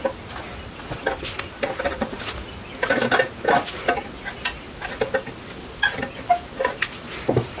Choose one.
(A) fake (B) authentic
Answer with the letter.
B